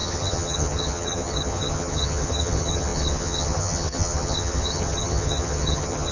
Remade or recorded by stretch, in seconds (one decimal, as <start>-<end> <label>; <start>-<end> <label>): 0.0-6.1 remade